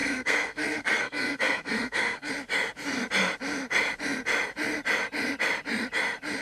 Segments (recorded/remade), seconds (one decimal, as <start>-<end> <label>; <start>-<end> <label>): 0.0-2.3 remade; 2.3-6.4 recorded